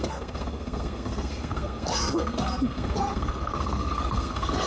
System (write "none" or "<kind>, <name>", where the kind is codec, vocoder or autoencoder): codec, SNAC